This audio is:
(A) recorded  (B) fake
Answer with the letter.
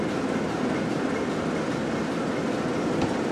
A